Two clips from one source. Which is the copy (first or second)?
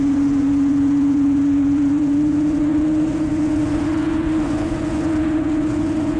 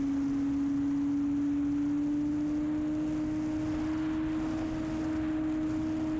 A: first